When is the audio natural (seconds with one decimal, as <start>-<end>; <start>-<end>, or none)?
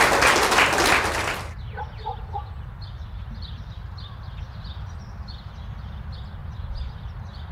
0.0-6.4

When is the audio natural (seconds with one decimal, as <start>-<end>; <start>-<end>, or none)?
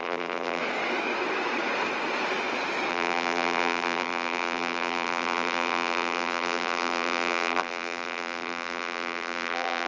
0.6-2.9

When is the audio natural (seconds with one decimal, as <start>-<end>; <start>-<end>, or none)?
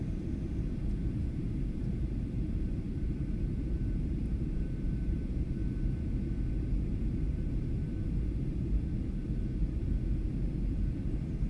5.6-6.5; 9.2-11.0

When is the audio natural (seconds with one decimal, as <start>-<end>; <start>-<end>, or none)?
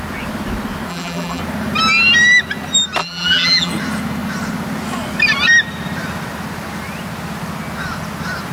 0.0-0.9; 1.4-3.0; 3.7-8.5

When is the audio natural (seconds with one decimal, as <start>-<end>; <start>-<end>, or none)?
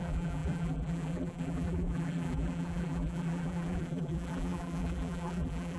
none